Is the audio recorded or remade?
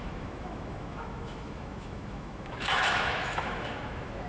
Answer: remade